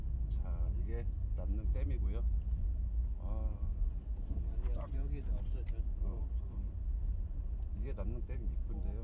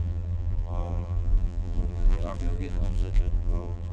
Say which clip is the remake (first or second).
second